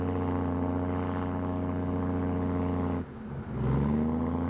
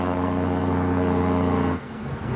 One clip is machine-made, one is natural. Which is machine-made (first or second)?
second